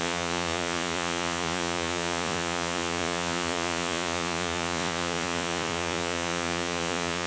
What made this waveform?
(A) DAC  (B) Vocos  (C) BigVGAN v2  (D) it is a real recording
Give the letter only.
B